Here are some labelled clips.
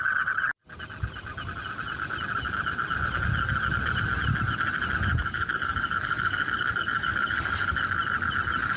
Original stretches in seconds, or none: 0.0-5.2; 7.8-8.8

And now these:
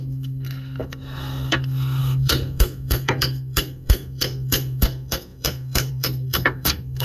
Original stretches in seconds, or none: none